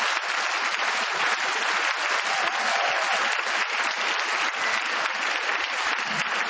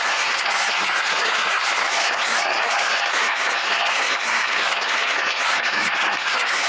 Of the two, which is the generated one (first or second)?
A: second